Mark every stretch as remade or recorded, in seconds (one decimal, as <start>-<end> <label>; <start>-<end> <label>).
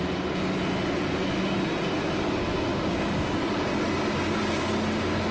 0.0-2.7 recorded; 2.7-3.4 remade; 3.4-5.3 recorded